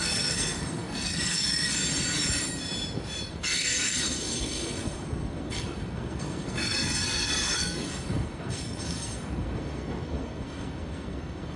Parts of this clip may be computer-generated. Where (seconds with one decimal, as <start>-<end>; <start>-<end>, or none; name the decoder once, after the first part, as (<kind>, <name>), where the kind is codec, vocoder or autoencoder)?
0.0-1.8 (codec, SNAC); 3.3-11.6